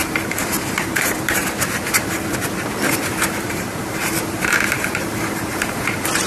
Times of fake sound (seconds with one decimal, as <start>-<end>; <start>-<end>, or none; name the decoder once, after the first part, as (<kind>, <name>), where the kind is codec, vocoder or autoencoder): 0.0-1.4 (vocoder, BigVGAN v2); 2.9-6.3